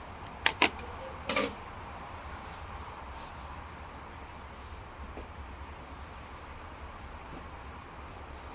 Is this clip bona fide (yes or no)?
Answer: no